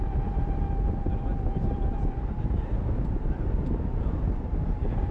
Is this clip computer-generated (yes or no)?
no